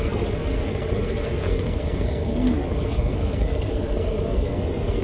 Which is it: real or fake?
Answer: fake